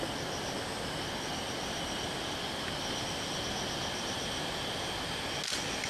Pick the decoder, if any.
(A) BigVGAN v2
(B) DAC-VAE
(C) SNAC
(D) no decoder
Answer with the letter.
D